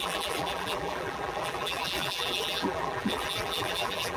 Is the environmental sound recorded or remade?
remade